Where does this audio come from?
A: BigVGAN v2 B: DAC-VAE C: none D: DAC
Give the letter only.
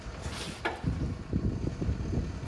C